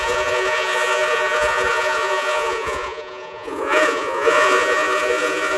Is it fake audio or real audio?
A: fake